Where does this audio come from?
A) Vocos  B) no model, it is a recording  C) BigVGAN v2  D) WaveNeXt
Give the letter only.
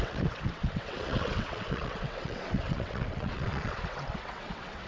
D